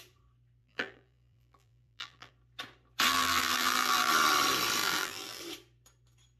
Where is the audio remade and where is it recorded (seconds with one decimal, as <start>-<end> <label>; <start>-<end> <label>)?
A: 0.0-0.6 recorded; 0.6-2.3 remade; 2.3-3.1 recorded; 3.1-4.1 remade; 4.1-4.8 recorded; 4.8-5.4 remade; 5.4-6.4 recorded